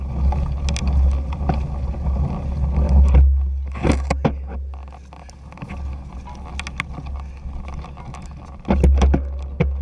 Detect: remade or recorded recorded